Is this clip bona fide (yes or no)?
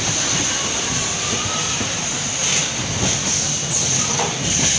yes